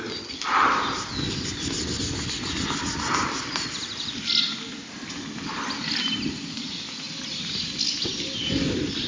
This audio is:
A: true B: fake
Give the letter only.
A